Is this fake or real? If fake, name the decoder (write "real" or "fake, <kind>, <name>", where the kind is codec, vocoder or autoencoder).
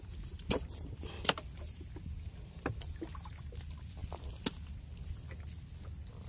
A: real